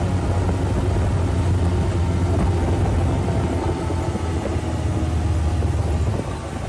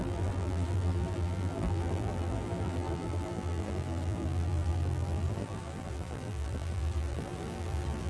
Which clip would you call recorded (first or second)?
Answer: first